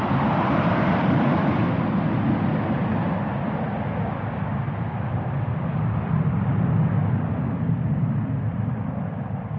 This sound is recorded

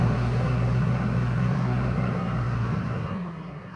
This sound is remade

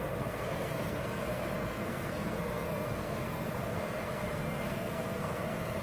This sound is remade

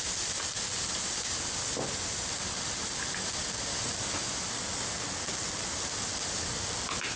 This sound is recorded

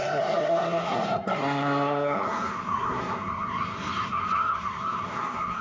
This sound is remade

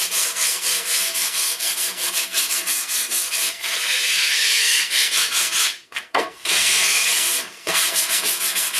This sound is remade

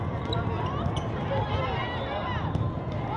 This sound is recorded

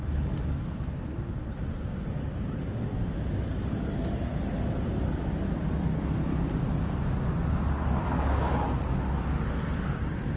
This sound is recorded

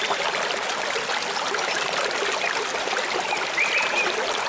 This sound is recorded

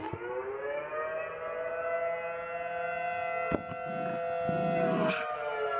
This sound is recorded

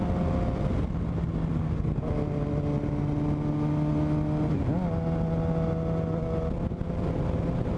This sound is recorded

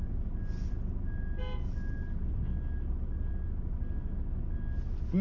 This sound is recorded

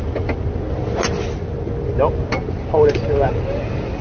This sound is recorded